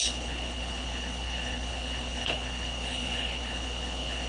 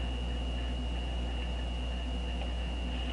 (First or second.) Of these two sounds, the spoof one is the first